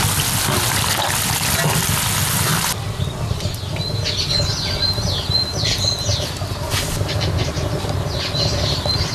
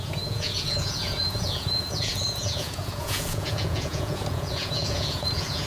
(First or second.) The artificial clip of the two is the second